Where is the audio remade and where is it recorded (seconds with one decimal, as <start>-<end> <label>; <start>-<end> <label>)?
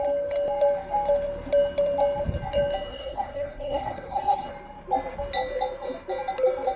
0.0-2.9 recorded; 2.9-4.5 remade; 4.5-6.8 recorded